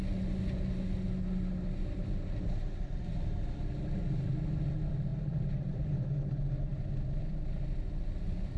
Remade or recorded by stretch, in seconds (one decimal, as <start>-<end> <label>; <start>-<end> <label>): 0.0-5.1 recorded; 5.1-6.1 remade; 6.1-8.6 recorded